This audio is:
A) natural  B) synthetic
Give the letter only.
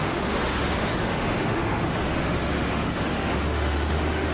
B